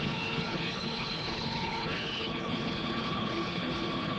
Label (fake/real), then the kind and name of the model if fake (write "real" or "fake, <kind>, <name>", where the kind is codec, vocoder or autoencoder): fake, codec, HILCodec